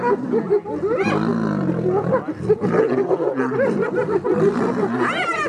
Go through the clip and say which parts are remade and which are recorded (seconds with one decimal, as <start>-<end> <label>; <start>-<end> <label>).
0.0-5.5 recorded